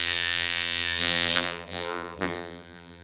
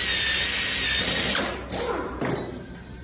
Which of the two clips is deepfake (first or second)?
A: first